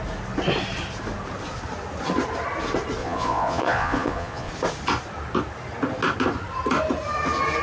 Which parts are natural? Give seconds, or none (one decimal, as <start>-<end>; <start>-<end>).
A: 0.0-3.0; 4.5-7.6